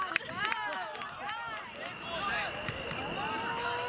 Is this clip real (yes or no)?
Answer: yes